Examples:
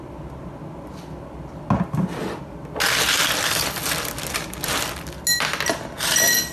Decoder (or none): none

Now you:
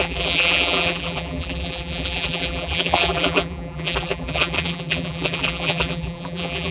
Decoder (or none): vocoder, BigVGAN v2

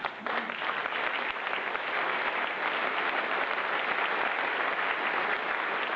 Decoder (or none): none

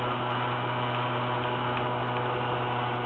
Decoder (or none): none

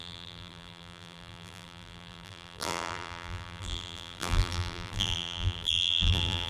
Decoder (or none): vocoder, BigVGAN v2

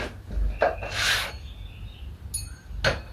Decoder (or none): none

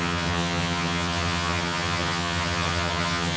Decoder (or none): vocoder, HiFi-GAN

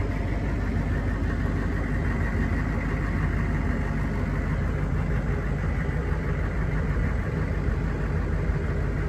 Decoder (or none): none